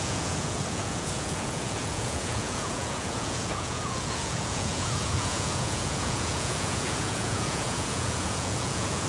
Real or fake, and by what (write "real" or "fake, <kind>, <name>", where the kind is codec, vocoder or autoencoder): fake, vocoder, Vocos